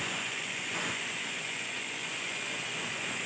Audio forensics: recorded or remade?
remade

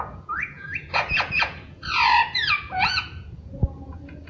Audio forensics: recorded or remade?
remade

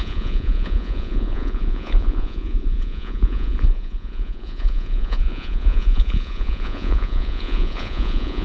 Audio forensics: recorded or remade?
remade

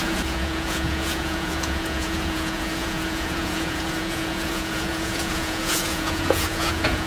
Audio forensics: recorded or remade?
remade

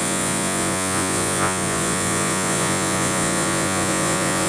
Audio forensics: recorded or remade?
remade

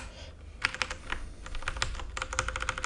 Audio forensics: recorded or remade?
recorded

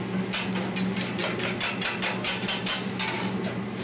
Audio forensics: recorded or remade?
recorded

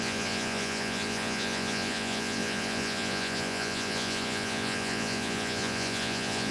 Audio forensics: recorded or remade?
remade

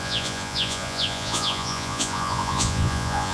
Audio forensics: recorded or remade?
remade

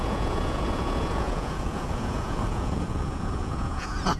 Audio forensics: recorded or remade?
remade